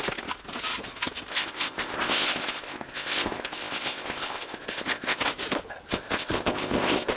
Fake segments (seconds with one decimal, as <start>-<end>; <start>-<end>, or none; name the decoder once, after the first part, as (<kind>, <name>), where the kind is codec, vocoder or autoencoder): 1.3-5.2 (codec, ZipCodec); 5.9-7.2